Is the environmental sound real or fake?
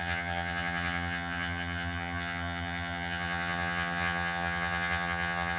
fake